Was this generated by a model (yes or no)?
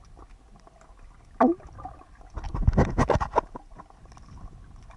no